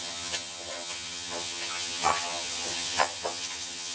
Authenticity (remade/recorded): remade